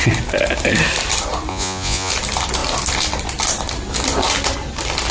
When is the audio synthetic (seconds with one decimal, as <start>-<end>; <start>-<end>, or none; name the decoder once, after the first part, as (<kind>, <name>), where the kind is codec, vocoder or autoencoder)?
1.5-2.1 (vocoder, Vocos)